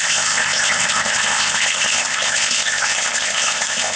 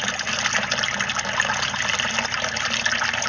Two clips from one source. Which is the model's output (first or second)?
first